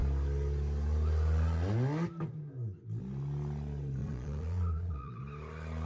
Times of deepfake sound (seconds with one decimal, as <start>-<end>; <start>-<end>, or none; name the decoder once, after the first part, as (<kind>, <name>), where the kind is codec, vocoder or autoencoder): 4.0-5.2 (vocoder, Vocos)